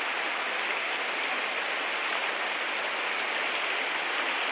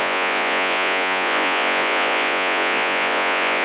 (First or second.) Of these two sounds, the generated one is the second